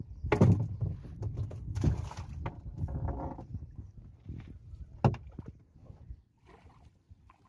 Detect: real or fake real